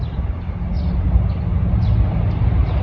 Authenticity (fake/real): real